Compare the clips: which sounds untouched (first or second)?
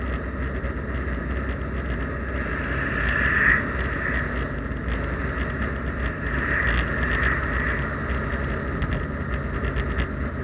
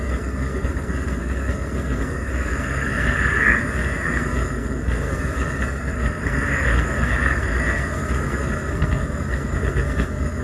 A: first